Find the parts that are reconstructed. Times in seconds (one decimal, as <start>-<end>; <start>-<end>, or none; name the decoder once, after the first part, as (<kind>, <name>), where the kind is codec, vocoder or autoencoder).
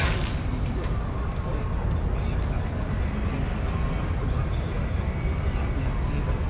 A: none